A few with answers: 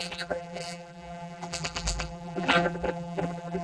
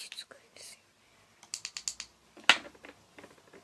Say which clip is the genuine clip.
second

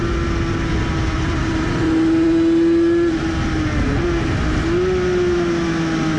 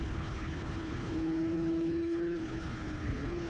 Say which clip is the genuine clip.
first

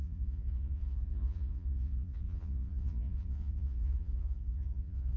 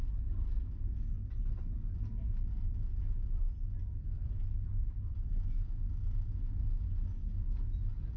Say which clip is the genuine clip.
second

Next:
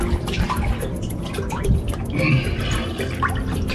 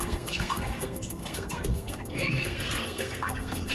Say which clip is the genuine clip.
first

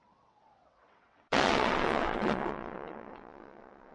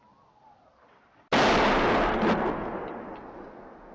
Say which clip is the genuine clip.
second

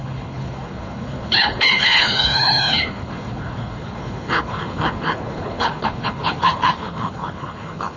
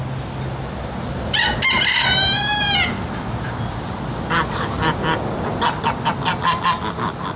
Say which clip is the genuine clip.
second